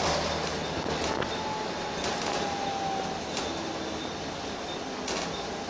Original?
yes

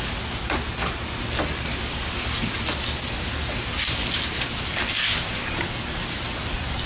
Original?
yes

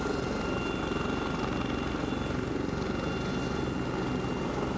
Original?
yes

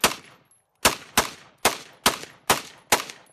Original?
yes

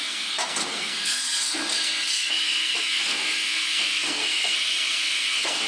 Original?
no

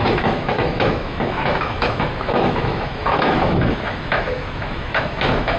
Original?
no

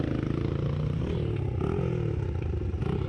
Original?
yes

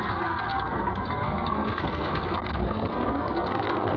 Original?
no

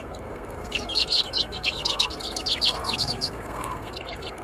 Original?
no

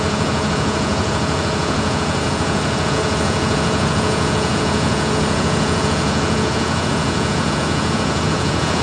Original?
no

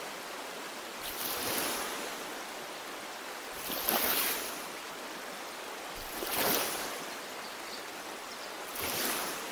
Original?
yes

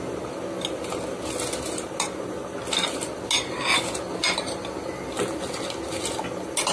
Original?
yes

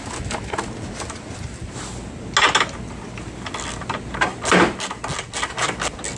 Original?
yes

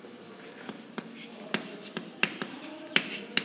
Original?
yes